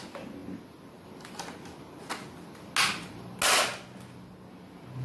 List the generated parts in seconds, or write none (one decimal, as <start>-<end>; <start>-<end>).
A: none